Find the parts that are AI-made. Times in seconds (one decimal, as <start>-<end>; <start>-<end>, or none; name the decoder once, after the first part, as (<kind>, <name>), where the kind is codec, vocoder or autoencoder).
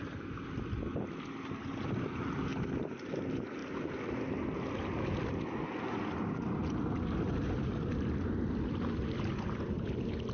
none